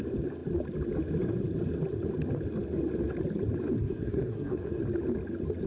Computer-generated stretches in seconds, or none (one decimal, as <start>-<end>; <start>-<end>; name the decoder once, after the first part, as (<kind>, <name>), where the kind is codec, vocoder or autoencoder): 3.8-4.8 (codec, SNAC)

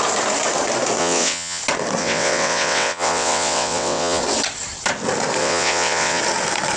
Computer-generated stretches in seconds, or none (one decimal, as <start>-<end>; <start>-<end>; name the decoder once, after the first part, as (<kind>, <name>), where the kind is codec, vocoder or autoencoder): 1.0-1.6 (vocoder, WaveNeXt); 2.0-4.2; 5.4-6.2

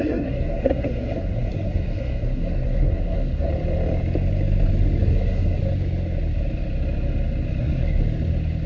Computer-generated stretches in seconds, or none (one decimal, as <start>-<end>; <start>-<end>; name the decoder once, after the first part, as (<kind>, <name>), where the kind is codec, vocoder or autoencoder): 0.0-3.5 (codec, SNAC); 5.0-5.6; 7.6-8.0

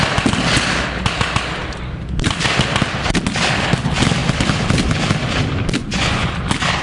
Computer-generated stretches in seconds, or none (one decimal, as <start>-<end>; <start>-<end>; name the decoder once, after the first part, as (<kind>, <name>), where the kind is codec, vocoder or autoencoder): 5.8-6.3 (vocoder, Vocos)